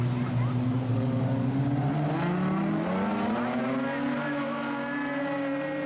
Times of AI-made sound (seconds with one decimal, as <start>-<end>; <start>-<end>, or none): 0.9-1.6